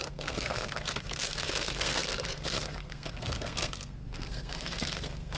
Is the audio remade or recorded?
remade